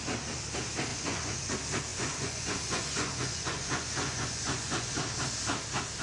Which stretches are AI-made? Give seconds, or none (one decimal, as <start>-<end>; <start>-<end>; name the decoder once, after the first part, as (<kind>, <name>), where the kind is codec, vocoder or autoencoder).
0.9-1.5 (vocoder, Vocos); 1.9-4.9